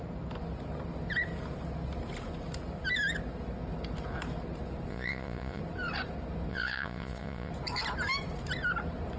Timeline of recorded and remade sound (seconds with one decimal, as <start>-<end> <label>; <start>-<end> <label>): 0.0-4.9 recorded; 4.9-5.6 remade; 5.6-6.5 recorded; 6.5-7.5 remade; 7.5-9.2 recorded